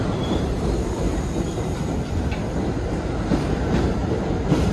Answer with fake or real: fake